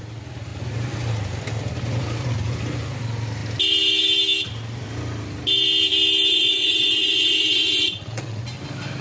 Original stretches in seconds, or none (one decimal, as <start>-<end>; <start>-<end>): 0.0-6.3; 8.4-9.0